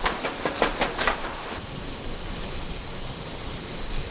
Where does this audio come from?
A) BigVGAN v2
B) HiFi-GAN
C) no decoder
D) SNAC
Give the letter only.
A